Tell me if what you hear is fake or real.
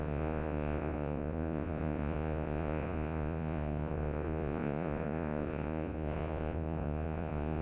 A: fake